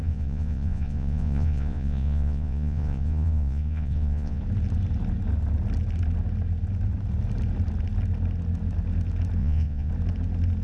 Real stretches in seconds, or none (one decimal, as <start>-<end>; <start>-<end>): 4.4-9.4; 9.9-10.6